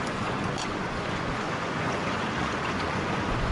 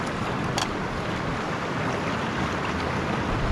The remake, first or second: first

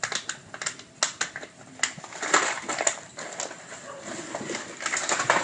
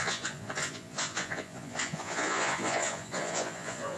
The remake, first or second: second